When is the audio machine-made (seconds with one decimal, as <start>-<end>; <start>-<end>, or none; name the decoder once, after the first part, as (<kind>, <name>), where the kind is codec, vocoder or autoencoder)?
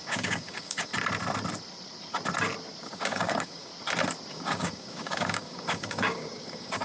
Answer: 0.0-0.9 (codec, DAC); 2.8-3.7; 4.3-6.8